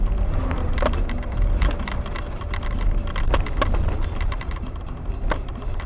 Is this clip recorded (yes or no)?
yes